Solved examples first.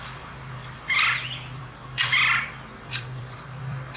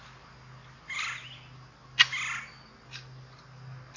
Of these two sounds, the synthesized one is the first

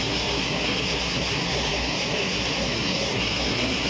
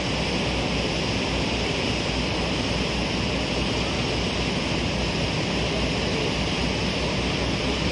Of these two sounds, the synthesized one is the first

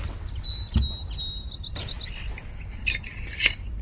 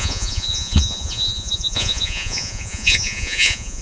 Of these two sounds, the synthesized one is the second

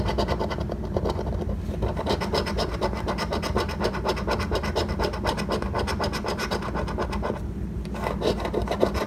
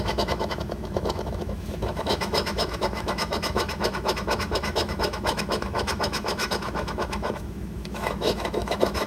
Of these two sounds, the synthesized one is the second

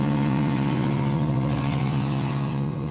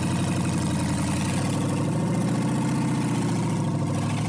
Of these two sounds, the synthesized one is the first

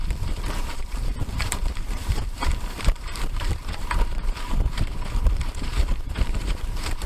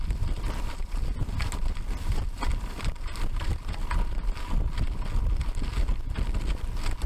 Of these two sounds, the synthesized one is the first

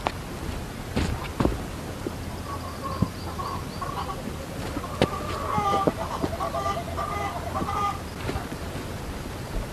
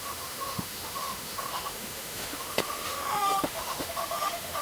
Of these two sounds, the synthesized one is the second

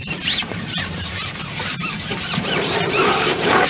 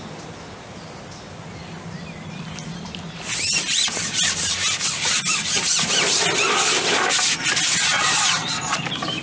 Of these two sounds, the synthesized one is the first